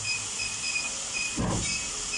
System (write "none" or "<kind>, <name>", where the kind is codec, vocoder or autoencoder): none